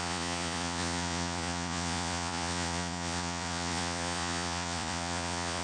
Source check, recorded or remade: remade